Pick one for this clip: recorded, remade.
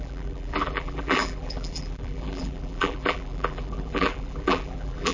remade